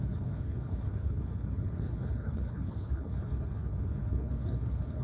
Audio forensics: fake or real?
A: fake